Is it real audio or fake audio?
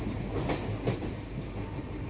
real